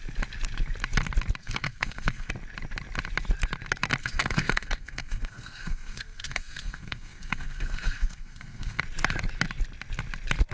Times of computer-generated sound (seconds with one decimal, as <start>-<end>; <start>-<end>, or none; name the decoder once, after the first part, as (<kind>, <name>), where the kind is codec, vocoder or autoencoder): 1.4-2.3 (codec, SNAC); 4.0-8.8